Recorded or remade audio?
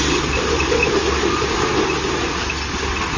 remade